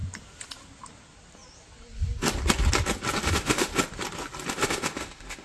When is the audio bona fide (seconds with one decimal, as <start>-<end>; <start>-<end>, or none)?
0.0-3.2; 3.7-4.5